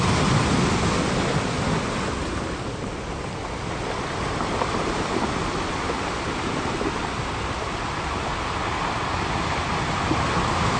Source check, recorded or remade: recorded